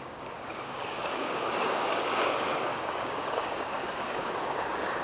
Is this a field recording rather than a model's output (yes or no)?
no